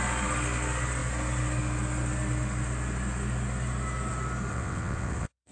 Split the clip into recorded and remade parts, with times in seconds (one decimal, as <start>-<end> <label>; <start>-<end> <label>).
0.0-4.5 recorded; 4.5-5.5 remade